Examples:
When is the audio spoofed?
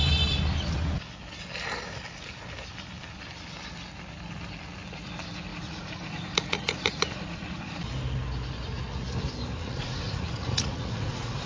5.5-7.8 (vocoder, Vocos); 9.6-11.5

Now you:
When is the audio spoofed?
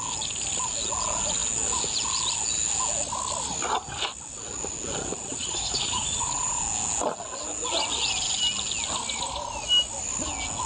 5.4-6.6 (vocoder, Vocos)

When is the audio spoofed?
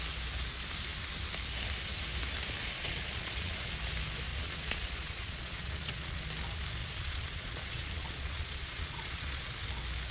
2.6-3.7 (vocoder, Vocos); 4.3-6.2; 6.8-9.5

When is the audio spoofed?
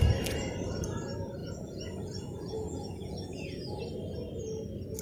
1.4-3.8 (vocoder, Vocos)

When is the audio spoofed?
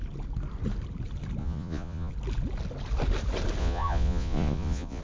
1.4-2.1 (vocoder, Vocos); 3.6-5.0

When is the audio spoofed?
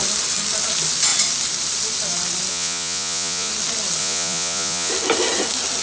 2.5-3.5 (vocoder, Vocos); 4.0-4.9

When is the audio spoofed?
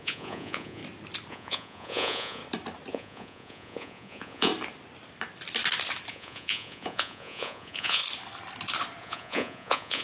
0.0-0.8 (vocoder, Vocos); 1.3-2.4; 2.9-4.5; 6.1-8.0; 9.0-10.0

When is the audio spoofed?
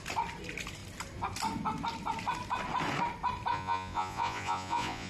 3.5-5.1 (vocoder, Vocos)